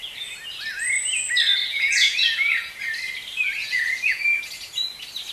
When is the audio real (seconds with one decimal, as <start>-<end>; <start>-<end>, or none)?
0.0-1.6; 2.7-3.6; 4.5-5.3